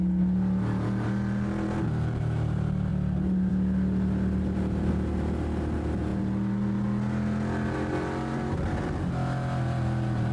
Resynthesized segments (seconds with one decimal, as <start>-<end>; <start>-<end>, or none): none

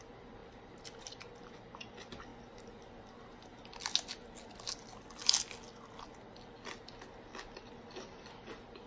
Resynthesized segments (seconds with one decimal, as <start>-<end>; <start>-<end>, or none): none

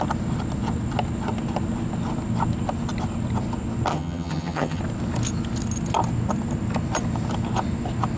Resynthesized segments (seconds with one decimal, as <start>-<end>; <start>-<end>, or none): 3.9-4.8

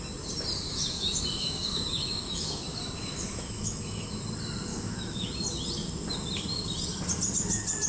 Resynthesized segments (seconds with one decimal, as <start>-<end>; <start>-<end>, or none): 0.7-4.2; 4.7-5.3

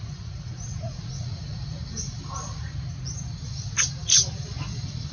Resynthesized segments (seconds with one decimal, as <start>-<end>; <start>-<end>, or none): 0.0-1.9

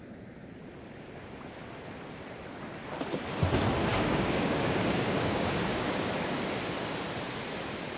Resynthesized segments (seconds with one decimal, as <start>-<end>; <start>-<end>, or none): 3.9-6.1

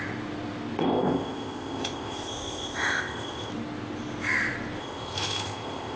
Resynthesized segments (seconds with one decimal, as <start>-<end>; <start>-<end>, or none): 0.8-3.5; 4.8-6.0